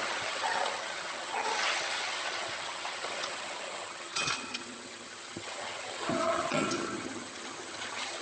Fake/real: fake